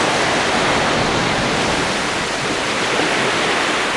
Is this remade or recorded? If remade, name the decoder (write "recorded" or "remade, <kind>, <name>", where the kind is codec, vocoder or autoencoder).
recorded